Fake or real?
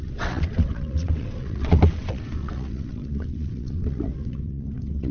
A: fake